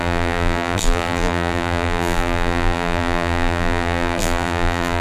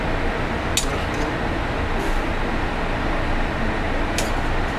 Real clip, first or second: second